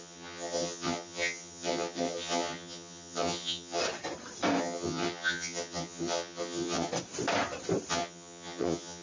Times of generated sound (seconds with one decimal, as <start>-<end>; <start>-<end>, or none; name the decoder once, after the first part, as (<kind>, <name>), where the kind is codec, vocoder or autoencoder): 0.0-3.8 (vocoder, HiFi-GAN); 4.6-6.9; 7.9-9.0